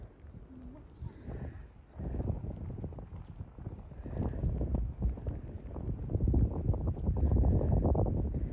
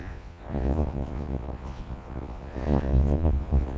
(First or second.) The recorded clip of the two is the first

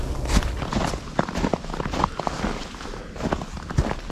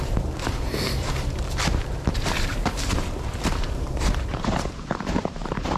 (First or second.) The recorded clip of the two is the first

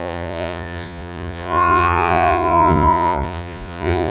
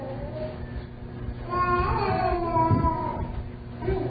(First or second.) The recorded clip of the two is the second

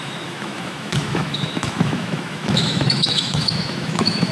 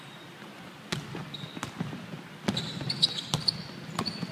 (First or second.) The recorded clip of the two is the second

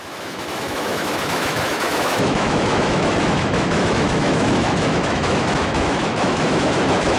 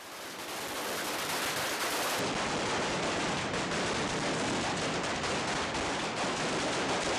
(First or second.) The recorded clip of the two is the second